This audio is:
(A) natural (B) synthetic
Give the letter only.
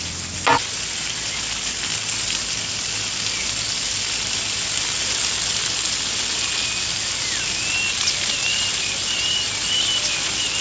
A